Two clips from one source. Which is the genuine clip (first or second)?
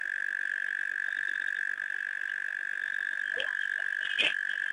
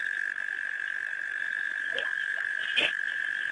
first